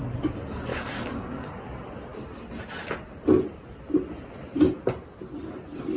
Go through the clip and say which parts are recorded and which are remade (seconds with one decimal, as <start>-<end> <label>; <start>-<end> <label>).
0.0-0.7 recorded; 0.7-1.5 remade; 1.5-6.0 recorded